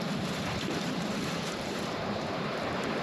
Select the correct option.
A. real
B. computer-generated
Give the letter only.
B